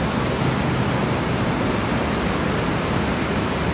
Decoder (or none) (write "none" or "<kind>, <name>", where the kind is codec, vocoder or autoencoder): none